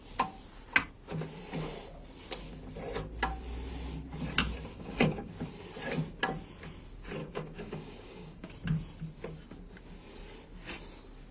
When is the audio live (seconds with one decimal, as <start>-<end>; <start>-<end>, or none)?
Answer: 0.0-4.7; 5.3-7.2; 8.5-11.3